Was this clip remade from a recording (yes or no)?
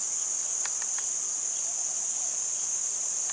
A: no